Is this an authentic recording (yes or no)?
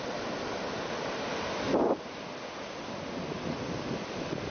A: yes